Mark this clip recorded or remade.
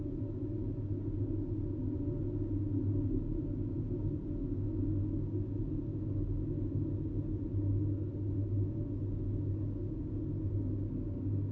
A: recorded